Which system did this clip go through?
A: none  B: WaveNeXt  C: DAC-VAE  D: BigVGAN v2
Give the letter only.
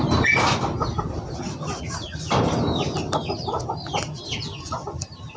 A